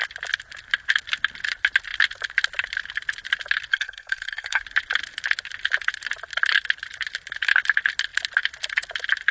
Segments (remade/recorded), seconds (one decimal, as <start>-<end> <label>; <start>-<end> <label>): 0.0-3.7 recorded; 3.7-4.6 remade; 4.6-9.3 recorded